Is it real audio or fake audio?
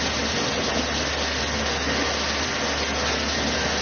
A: real